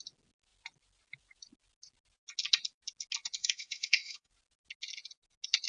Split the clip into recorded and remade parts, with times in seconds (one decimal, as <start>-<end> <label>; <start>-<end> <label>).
0.0-3.4 recorded; 3.4-4.3 remade; 4.3-5.7 recorded